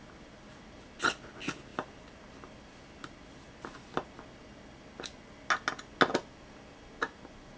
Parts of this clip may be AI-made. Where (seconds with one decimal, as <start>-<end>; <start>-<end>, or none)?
none